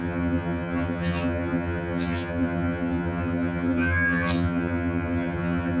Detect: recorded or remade remade